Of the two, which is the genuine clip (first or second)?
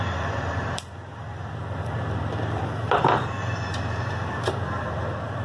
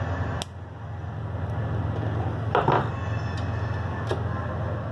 second